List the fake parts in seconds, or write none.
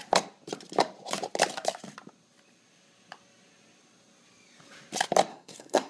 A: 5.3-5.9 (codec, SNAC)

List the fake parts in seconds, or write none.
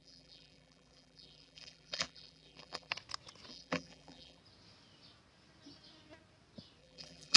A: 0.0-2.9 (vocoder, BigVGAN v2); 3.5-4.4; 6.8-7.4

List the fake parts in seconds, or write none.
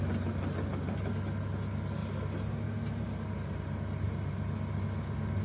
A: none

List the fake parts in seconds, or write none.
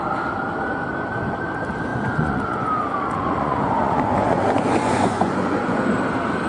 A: 1.9-5.8 (vocoder, Vocos)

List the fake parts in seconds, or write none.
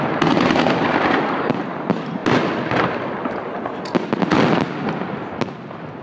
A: none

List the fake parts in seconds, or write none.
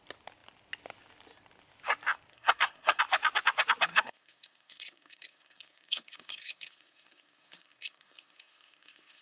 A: 2.3-3.0 (codec, SNAC); 3.9-9.2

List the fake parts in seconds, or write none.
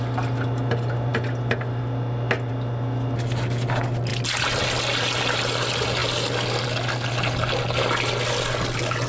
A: none